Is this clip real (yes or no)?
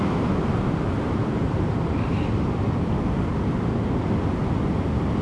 yes